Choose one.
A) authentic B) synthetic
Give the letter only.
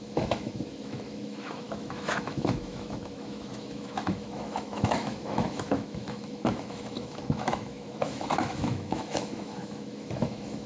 B